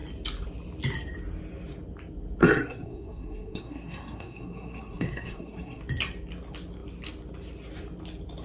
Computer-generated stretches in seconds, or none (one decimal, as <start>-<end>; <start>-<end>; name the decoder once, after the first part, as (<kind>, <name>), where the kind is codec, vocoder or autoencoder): 2.4-5.8 (codec, SNAC)